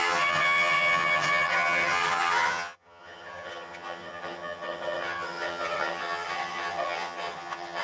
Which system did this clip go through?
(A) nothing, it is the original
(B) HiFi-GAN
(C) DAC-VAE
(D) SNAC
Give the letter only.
B